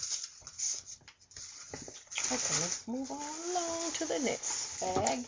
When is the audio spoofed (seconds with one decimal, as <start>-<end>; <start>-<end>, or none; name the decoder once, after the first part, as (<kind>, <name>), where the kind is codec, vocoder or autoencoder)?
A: none